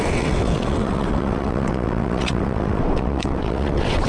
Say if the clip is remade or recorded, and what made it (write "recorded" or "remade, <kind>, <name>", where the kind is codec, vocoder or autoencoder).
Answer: remade, vocoder, WaveNeXt